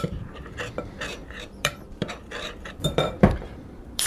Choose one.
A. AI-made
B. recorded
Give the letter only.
A